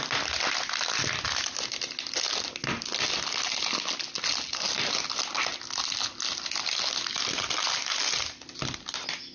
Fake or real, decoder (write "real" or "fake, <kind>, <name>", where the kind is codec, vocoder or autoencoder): real